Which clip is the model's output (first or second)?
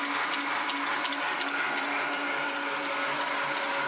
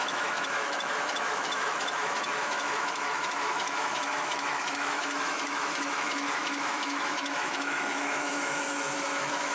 second